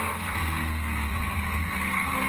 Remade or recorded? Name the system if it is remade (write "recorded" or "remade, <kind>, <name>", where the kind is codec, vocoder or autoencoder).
remade, codec, SNAC